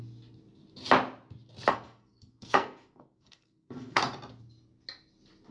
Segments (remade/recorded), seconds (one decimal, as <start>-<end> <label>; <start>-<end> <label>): 0.0-1.7 recorded; 1.7-4.0 remade; 4.0-5.5 recorded

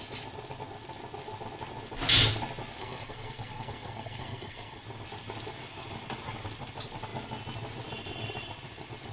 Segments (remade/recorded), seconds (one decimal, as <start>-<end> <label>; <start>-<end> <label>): 0.0-2.8 recorded; 2.8-4.8 remade; 4.8-9.1 recorded

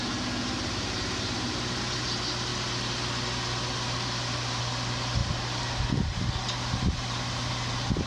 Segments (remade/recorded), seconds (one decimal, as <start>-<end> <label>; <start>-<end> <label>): 0.0-8.1 recorded

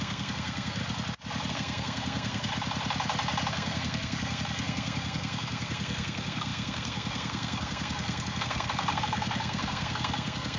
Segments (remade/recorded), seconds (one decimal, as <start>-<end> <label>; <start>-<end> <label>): 0.0-0.8 remade; 0.8-1.5 recorded; 1.5-2.5 remade; 2.5-3.5 recorded; 3.5-10.6 remade

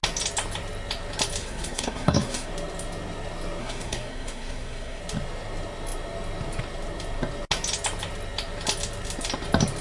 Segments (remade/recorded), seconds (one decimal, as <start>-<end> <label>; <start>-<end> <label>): 0.0-1.4 recorded; 1.4-2.5 remade; 2.5-3.6 recorded; 3.6-5.0 remade; 5.0-9.8 recorded

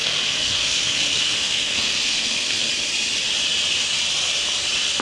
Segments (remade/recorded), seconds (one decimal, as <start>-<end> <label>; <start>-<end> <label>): 0.0-2.7 remade; 2.7-5.0 recorded

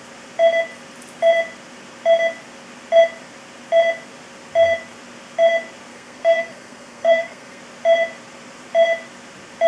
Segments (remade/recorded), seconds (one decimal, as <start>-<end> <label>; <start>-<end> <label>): 0.0-5.9 recorded; 5.9-7.6 remade; 7.6-9.7 recorded

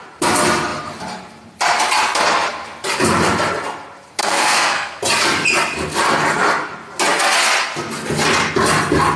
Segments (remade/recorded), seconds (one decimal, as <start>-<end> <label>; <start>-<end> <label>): 0.0-4.2 recorded; 4.2-5.0 remade; 5.0-9.2 recorded